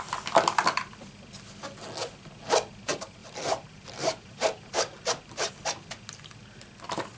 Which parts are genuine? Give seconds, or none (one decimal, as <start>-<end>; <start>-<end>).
0.0-3.2; 5.5-7.2